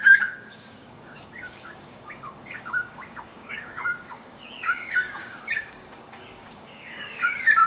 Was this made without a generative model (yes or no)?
no